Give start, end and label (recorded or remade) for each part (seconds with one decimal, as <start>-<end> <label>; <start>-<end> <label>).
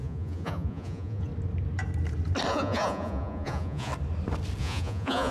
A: 0.0-1.3 remade; 1.3-2.5 recorded; 2.5-3.9 remade; 3.9-4.6 recorded; 4.6-5.3 remade